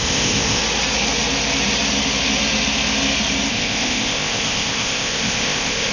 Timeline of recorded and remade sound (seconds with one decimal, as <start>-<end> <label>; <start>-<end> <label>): 0.0-0.6 remade; 0.6-3.5 recorded; 3.5-5.9 remade